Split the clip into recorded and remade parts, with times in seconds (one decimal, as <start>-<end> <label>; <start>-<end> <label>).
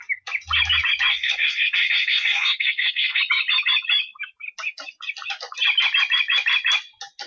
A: 0.0-1.1 recorded; 1.1-3.2 remade; 3.2-7.3 recorded